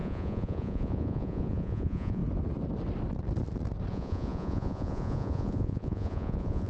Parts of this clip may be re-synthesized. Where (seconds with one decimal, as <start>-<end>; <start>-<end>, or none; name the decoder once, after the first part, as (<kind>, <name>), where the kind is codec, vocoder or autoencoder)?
0.0-2.2 (vocoder, Vocos); 3.9-6.7